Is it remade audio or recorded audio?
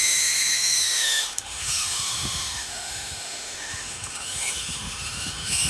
remade